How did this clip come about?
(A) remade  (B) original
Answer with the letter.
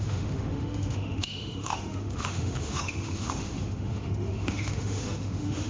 A